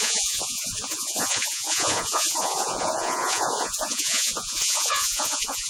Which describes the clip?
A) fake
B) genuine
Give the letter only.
A